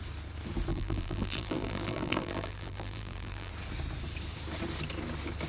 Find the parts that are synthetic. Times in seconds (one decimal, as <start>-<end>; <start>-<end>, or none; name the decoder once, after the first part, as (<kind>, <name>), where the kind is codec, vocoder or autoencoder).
0.7-3.5 (vocoder, BigVGAN v2)